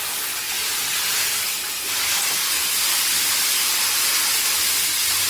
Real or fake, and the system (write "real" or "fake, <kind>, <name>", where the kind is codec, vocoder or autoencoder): real